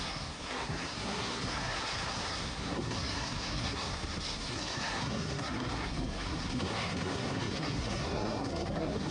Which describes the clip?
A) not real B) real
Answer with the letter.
A